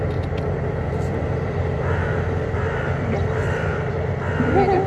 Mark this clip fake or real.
real